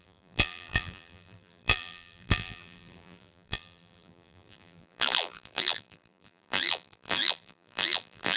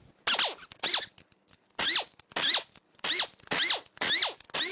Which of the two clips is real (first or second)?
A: second